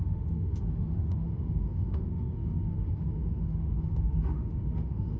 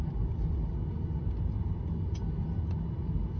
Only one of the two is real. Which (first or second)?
second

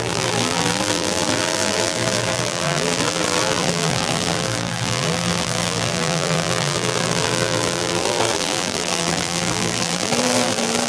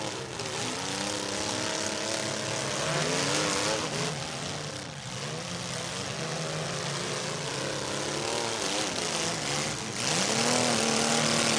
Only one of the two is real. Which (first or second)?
second